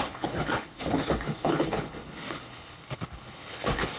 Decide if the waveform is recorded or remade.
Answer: remade